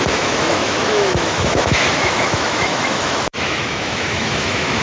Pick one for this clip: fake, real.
fake